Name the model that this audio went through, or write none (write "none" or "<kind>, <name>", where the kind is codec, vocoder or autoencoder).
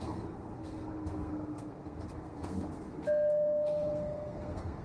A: codec, SNAC